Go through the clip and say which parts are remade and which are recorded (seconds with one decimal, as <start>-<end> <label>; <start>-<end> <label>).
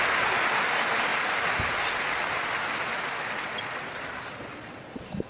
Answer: 0.0-5.3 recorded